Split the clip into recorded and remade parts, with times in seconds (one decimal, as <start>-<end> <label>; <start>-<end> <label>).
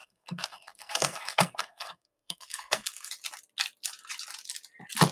0.0-3.1 remade; 3.1-5.1 recorded